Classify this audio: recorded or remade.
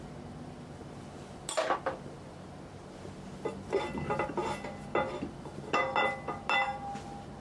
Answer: recorded